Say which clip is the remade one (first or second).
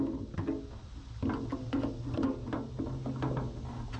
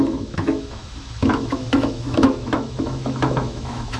second